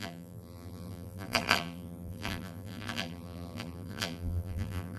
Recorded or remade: remade